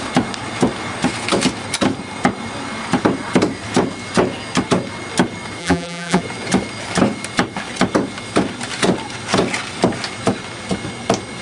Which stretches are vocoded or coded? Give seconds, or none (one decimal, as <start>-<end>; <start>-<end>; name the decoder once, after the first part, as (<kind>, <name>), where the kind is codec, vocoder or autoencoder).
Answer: 5.6-6.2 (vocoder, BigVGAN v2)